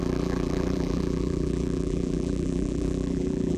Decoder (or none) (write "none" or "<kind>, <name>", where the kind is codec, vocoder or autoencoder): vocoder, BigVGAN v2